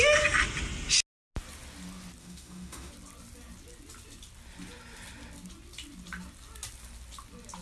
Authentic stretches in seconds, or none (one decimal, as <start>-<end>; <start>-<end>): 0.0-2.2; 2.9-7.6